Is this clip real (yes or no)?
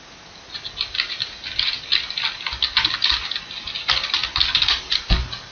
yes